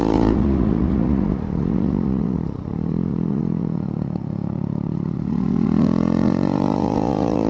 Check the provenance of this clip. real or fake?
fake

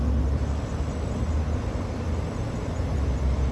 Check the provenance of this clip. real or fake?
fake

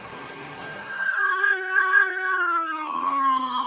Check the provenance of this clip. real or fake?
fake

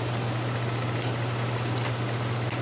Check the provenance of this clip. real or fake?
real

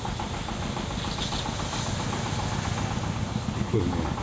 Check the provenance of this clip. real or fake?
real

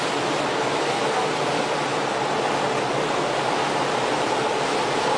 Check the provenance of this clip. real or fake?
real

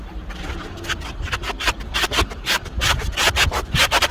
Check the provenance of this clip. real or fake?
fake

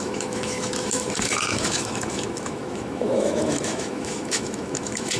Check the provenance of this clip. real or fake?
fake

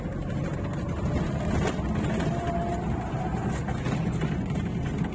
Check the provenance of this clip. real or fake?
real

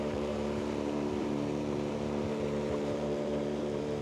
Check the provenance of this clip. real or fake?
fake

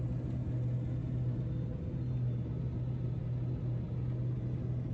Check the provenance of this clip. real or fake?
real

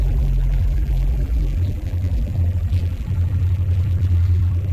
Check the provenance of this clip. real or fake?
fake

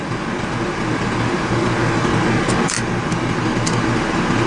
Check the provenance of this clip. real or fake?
real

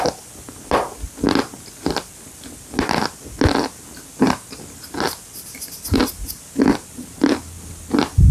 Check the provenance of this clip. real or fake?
real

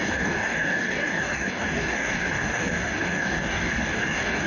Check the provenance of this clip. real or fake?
fake